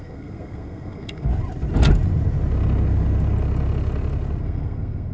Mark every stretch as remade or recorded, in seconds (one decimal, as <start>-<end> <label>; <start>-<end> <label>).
0.0-1.3 remade; 1.3-4.4 recorded; 4.4-5.1 remade